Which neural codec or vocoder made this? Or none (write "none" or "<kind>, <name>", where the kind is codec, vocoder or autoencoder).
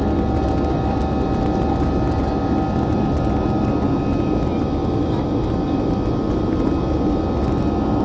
none